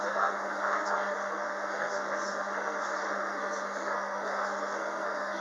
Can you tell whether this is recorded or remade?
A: remade